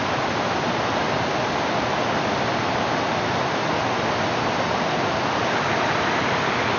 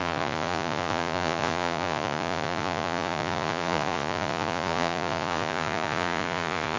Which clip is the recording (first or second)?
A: first